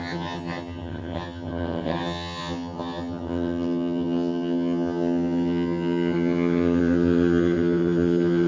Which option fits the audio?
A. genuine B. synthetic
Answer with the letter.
B